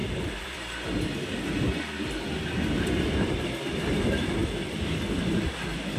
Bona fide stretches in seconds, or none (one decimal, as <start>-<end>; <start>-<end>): 0.0-3.6